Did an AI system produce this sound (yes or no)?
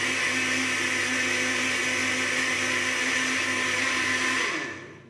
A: no